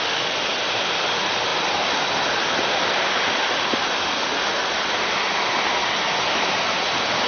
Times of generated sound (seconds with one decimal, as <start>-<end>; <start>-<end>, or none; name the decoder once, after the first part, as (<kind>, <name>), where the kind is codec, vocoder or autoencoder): none